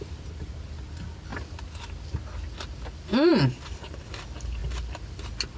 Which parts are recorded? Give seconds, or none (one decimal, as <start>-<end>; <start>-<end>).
0.0-5.6